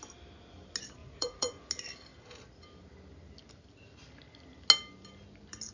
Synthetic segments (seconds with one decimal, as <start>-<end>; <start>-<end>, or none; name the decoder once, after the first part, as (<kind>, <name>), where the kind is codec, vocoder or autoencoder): 1.0-1.7 (vocoder, Vocos)